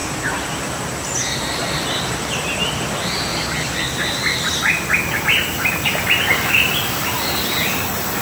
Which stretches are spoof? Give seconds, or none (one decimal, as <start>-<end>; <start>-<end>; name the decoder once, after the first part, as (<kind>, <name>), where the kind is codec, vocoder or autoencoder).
none